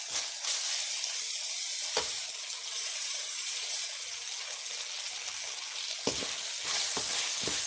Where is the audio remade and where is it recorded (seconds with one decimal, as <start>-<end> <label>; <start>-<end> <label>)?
0.0-2.6 recorded; 2.6-4.0 remade; 4.0-7.7 recorded

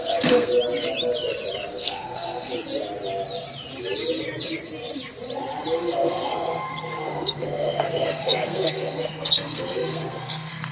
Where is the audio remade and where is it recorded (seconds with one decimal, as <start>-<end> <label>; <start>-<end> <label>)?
0.0-0.5 remade; 0.5-1.7 recorded; 1.7-2.5 remade; 2.5-5.8 recorded; 5.8-10.7 remade

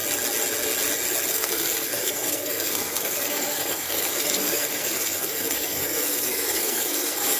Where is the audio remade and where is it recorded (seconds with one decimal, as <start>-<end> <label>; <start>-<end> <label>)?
0.0-1.3 recorded; 1.3-7.4 remade

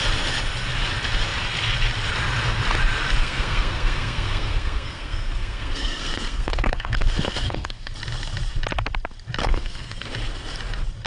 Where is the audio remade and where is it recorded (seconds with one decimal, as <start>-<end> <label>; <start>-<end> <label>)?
0.0-3.2 recorded; 3.2-7.9 remade; 7.9-9.4 recorded; 9.4-10.1 remade; 10.1-11.1 recorded